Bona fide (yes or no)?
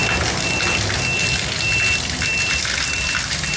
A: yes